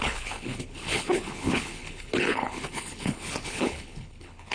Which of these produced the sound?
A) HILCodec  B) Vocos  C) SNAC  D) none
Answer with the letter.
A